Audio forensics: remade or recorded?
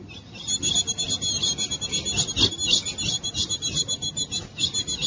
recorded